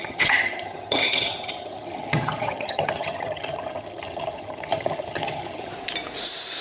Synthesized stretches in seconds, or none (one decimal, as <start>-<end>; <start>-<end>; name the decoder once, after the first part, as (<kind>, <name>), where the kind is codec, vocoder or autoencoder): 0.0-5.7 (vocoder, HiFi-GAN)